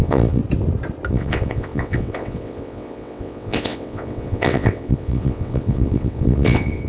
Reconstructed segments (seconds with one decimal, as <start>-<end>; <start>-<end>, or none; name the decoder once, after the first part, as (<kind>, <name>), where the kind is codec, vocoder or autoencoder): 0.0-0.4 (vocoder, WaveNeXt); 1.1-6.9